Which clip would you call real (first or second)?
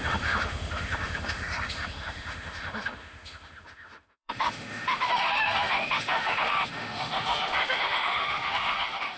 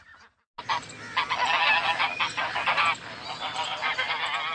second